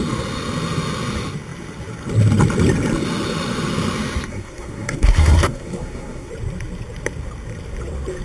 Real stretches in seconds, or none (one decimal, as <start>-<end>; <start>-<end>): 0.0-4.3; 6.3-8.2